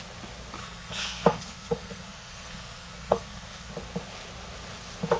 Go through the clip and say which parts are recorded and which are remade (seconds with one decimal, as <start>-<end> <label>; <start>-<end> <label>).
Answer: 0.0-0.6 recorded; 0.6-3.7 remade; 3.7-5.2 recorded